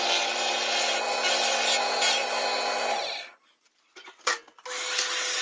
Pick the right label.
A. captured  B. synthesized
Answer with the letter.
A